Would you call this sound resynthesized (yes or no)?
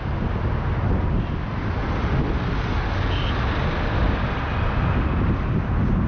no